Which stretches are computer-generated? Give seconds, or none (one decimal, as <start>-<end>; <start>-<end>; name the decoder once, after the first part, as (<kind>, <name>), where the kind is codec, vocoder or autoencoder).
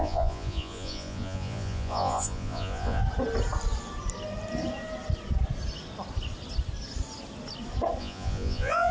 0.0-3.0 (vocoder, Vocos); 8.0-8.9